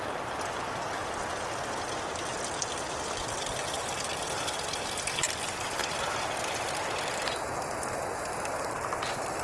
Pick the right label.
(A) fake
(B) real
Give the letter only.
B